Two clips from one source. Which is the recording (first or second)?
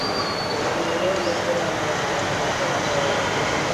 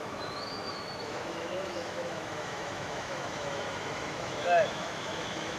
first